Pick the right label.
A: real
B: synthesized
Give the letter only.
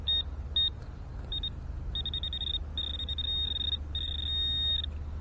A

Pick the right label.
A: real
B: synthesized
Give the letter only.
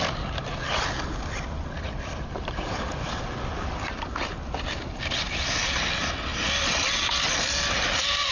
A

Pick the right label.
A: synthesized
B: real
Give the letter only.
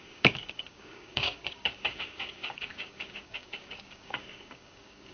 A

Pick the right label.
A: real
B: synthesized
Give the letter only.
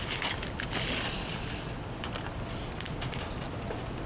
A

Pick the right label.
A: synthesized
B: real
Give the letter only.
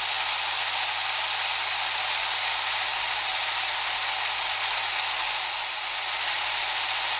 B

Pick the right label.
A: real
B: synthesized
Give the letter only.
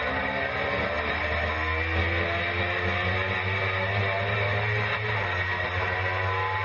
A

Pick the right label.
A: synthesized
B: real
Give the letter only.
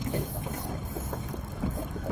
A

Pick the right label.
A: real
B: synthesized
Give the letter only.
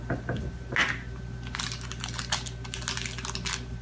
A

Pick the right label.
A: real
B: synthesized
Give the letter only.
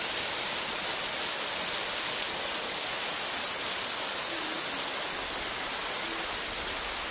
A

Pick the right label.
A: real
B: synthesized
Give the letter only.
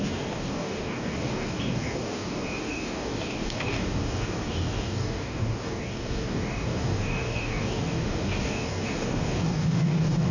B